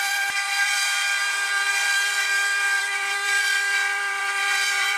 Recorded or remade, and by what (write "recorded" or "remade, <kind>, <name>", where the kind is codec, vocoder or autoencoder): remade, vocoder, BigVGAN v2